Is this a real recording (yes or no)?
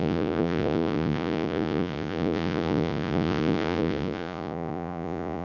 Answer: no